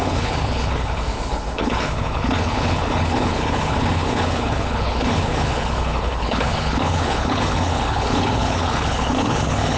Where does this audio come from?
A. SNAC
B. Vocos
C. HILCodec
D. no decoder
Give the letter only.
C